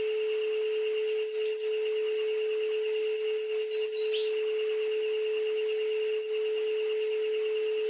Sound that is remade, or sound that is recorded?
recorded